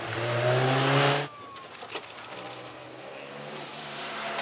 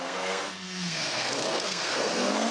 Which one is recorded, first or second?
first